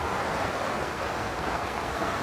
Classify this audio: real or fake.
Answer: fake